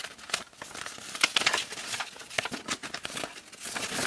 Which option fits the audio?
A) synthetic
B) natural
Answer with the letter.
B